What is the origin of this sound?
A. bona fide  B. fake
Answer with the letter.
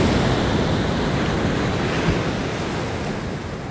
A